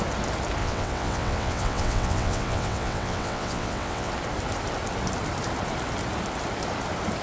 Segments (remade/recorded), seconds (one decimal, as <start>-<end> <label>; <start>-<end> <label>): 0.0-0.6 recorded; 0.6-4.1 remade; 4.1-7.2 recorded